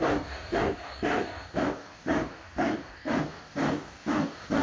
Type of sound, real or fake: fake